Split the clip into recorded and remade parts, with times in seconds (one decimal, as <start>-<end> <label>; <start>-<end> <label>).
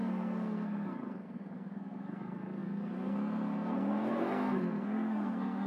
0.0-5.7 remade